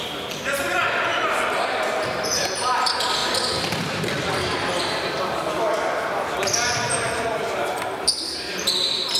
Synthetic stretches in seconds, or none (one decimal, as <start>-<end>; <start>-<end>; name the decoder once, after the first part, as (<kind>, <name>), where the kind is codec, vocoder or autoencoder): 3.2-5.8 (vocoder, BigVGAN v2)